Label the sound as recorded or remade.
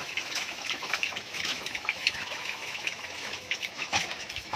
remade